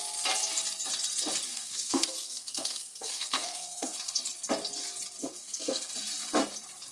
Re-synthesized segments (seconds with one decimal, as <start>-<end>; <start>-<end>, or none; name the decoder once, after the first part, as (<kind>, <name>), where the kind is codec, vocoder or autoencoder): 1.5-4.2 (codec, SNAC); 5.2-5.9